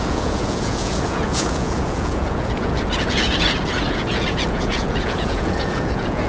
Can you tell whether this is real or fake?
fake